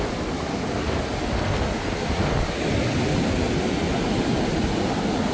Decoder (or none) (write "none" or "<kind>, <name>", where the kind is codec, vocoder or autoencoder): none